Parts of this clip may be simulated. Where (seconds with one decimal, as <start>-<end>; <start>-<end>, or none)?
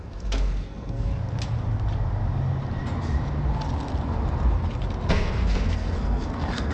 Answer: 0.0-1.1; 5.1-6.7